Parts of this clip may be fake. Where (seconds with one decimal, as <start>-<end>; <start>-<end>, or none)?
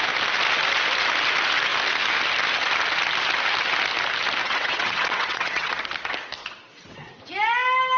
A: 4.4-5.7; 6.4-7.2